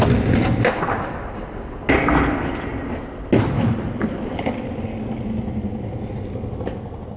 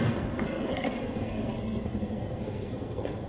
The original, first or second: first